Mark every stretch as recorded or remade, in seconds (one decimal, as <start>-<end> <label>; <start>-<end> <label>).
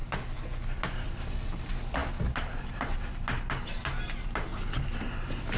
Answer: 0.0-5.6 recorded